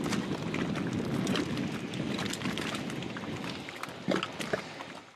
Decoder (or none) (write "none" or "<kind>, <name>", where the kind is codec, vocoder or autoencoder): none